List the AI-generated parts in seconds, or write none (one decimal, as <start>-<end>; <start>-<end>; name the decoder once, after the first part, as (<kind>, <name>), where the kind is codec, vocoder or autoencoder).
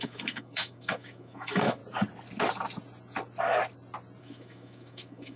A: 0.0-1.8 (autoencoder, DAC-VAE); 4.2-5.4